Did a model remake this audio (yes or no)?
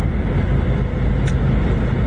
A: no